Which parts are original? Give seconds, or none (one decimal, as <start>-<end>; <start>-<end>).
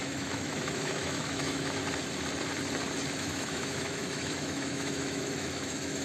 1.8-3.1